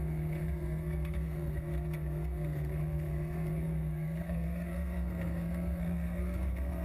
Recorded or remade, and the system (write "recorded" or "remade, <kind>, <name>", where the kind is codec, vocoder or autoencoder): remade, codec, SNAC